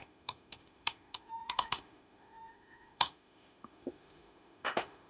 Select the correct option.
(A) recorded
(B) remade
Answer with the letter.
B